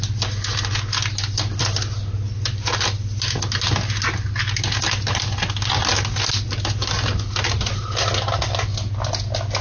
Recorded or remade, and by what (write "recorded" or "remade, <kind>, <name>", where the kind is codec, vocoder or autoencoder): recorded